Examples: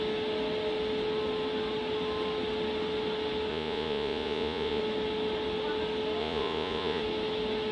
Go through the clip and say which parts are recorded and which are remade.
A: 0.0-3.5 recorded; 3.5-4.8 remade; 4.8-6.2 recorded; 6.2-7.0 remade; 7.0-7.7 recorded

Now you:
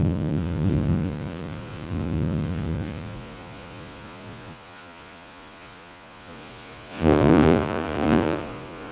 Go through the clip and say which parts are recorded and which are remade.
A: 0.0-8.9 remade

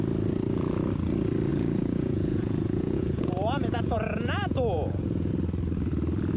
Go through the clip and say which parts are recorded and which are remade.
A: 0.0-1.5 recorded; 1.5-5.3 remade; 5.3-6.4 recorded

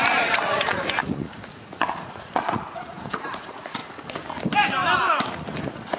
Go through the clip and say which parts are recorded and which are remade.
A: 0.0-3.8 remade; 3.8-5.3 recorded; 5.3-6.0 remade

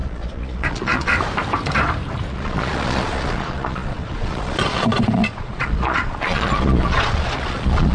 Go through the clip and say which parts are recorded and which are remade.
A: 0.0-1.1 remade; 1.1-2.3 recorded; 2.3-7.9 remade

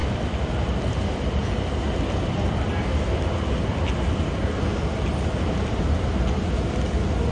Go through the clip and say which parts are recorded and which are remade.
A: 0.0-7.3 recorded

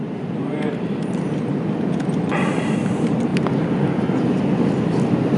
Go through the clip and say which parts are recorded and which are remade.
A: 0.0-5.4 recorded